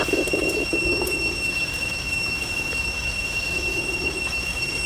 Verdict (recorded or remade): remade